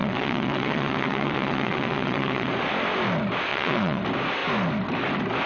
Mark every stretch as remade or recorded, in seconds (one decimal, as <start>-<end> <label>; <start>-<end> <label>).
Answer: 0.0-2.5 remade; 2.5-3.5 recorded; 3.5-4.0 remade; 4.0-5.5 recorded